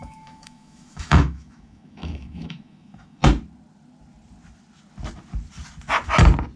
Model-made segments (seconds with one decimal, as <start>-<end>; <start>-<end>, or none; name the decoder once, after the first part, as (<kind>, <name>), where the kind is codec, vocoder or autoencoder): 0.0-3.2 (autoencoder, DAC-VAE)